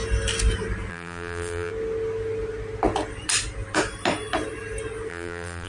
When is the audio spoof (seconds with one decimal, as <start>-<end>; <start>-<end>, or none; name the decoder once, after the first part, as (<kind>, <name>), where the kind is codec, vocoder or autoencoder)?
0.9-1.7 (vocoder, BigVGAN v2); 5.1-5.7